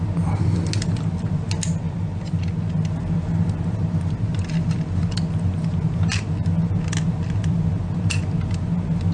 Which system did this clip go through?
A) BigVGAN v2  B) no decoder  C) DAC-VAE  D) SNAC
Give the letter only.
B